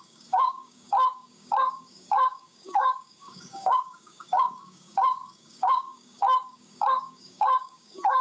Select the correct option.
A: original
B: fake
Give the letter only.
B